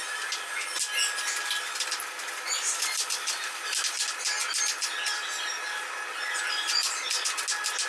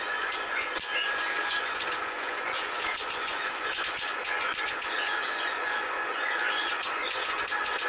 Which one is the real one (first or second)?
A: first